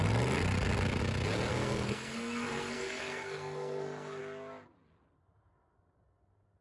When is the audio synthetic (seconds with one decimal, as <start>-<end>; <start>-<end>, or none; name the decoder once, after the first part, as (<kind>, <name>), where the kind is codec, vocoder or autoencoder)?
1.5-4.2 (codec, SNAC)